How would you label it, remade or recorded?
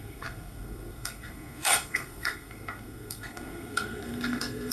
remade